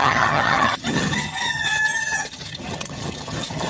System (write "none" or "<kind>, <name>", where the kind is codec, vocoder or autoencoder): vocoder, HiFi-GAN